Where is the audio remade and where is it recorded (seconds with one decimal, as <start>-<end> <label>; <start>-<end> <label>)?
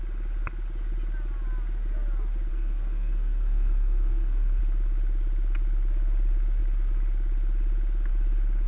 0.0-2.5 recorded; 2.5-4.6 remade; 4.6-8.7 recorded